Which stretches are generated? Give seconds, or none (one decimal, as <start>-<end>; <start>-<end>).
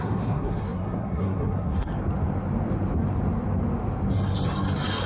0.0-1.9